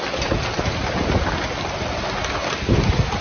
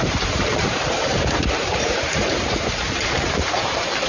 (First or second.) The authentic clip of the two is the first